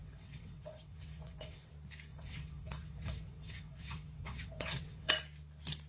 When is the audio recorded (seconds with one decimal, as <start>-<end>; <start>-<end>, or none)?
1.7-2.1; 5.1-5.9